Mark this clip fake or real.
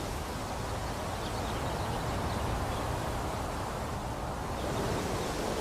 real